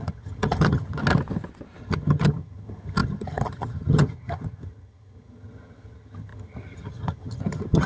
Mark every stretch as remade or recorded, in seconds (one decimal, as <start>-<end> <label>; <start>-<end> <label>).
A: 0.0-1.0 remade; 1.0-1.8 recorded; 1.8-7.9 remade